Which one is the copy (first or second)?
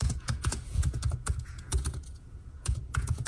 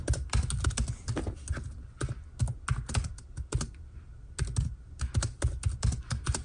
first